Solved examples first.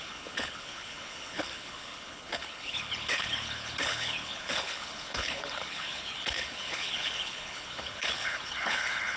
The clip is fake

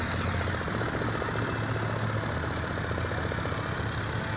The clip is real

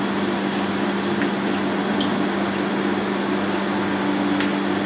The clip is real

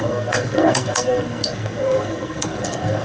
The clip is fake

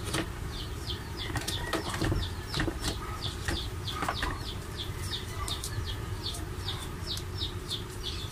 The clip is fake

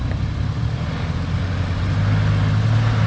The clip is real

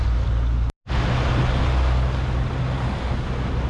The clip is real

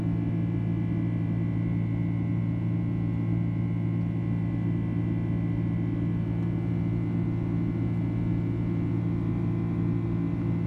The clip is real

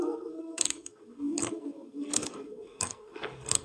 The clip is fake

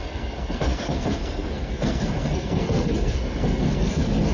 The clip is fake